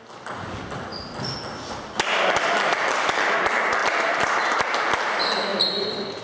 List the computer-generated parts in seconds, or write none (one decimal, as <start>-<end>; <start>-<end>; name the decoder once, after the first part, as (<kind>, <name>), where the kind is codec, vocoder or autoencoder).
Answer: 3.8-4.9 (vocoder, BigVGAN v2); 5.5-6.2